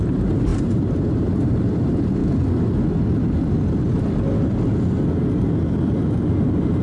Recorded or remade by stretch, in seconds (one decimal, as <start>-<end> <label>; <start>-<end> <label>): 0.0-2.2 remade; 2.2-6.3 recorded; 6.3-6.8 remade